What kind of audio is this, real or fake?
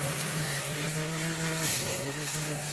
fake